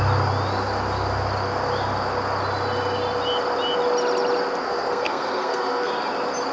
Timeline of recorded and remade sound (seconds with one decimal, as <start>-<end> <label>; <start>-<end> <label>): 0.0-4.6 recorded; 4.6-5.9 remade; 5.9-6.5 recorded